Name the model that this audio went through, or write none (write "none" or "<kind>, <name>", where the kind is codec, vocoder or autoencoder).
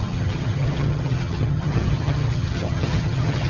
vocoder, HiFi-GAN